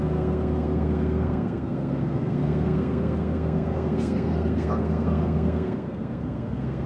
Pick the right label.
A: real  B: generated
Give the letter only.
B